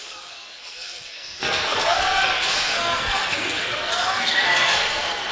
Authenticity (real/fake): fake